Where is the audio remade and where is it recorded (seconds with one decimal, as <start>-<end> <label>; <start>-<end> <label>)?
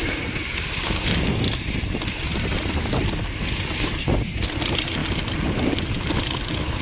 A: 0.0-0.4 recorded; 0.4-1.3 remade; 1.3-6.8 recorded